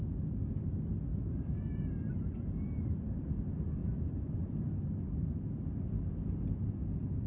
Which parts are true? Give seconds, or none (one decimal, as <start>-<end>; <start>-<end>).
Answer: 0.0-1.1; 2.1-3.8; 4.5-7.3